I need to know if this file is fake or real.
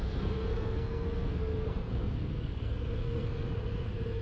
fake